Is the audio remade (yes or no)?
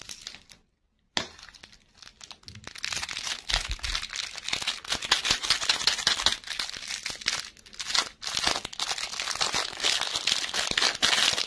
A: no